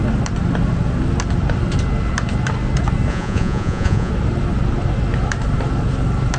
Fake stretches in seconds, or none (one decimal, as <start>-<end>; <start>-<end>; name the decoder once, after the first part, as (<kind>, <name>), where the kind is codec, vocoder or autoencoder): 3.1-4.1 (vocoder, Vocos)

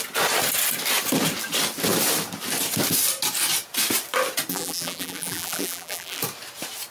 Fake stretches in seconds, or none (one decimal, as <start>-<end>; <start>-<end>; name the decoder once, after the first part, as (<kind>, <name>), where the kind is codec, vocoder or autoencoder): 4.5-6.2 (vocoder, BigVGAN v2)

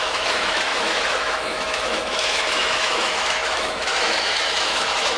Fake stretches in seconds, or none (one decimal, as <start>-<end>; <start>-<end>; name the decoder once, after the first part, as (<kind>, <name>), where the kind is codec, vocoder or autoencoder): 0.0-5.2 (autoencoder, DAC-VAE)

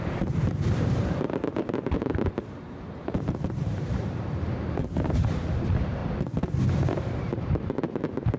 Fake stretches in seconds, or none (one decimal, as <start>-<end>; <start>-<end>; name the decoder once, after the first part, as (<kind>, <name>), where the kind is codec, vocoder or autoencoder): 0.0-6.0 (vocoder, BigVGAN v2); 7.1-8.4

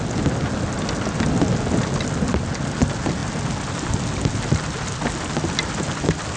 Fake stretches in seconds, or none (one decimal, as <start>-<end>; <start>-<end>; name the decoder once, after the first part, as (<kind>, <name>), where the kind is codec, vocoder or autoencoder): none

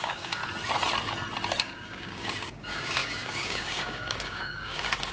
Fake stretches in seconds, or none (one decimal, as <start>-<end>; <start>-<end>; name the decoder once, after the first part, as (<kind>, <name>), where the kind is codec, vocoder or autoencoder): 0.0-0.4 (codec, DAC); 1.6-5.1

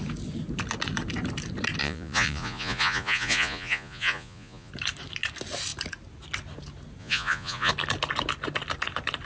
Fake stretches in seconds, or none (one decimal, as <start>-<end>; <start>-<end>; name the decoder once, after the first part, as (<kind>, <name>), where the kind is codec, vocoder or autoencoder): 1.8-4.7 (vocoder, Vocos); 7.0-7.7

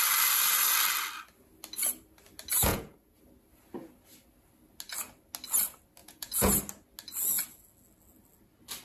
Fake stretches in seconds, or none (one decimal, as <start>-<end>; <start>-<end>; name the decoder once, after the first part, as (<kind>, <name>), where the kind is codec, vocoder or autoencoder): 2.7-3.2 (vocoder, Vocos); 6.0-6.5